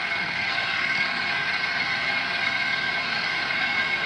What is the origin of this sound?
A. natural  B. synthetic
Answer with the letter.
B